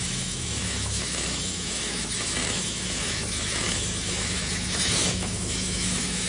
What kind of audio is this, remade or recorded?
remade